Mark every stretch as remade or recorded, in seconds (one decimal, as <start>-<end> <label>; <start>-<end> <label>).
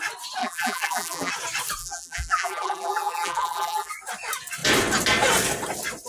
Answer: 0.0-0.4 recorded; 0.4-1.3 remade; 1.3-1.8 recorded; 1.8-3.9 remade; 3.9-6.1 recorded